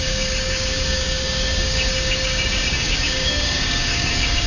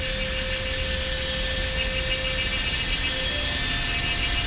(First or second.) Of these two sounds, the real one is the second